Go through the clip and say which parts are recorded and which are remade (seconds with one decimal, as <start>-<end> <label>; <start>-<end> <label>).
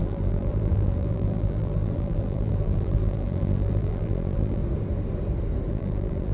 0.0-4.6 remade; 4.6-5.7 recorded; 5.7-6.3 remade